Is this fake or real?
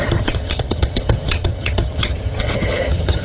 fake